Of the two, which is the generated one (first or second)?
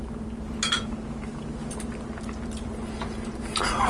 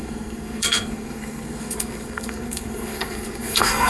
second